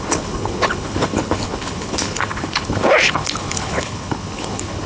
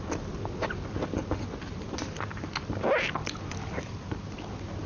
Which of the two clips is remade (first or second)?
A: first